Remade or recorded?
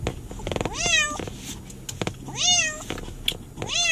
recorded